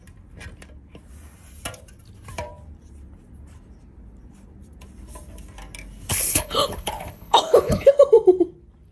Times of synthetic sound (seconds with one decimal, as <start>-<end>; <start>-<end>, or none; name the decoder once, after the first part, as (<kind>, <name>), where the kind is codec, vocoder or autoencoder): 6.1-7.9 (codec, HILCodec)